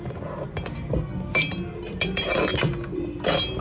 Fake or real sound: real